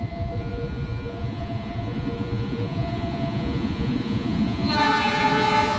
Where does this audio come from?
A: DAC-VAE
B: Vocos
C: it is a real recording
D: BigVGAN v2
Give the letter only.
B